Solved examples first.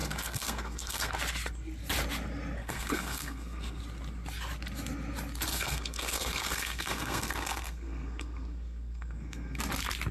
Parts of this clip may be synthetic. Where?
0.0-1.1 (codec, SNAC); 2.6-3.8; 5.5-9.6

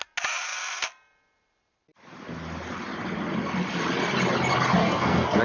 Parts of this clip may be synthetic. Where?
4.8-5.4 (codec, SNAC)

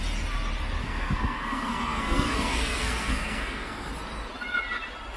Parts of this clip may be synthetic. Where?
0.8-3.9 (codec, SNAC)

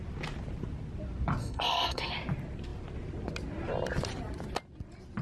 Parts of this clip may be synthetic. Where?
1.4-2.1 (codec, SNAC)